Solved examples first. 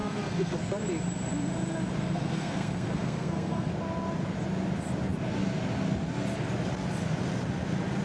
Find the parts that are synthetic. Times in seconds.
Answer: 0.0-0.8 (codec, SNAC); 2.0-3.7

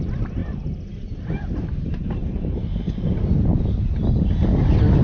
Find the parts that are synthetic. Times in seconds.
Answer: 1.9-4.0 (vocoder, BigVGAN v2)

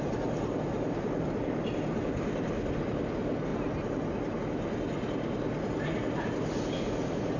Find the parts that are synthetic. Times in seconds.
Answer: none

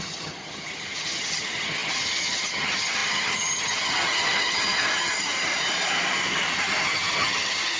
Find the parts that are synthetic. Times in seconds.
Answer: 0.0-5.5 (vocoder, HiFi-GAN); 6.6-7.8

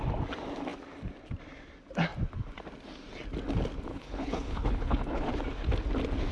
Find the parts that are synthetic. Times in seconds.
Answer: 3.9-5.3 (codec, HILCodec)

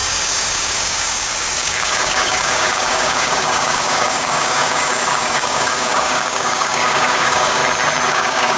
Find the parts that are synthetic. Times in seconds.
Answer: 0.0-7.6 (codec, DAC); 8.1-8.6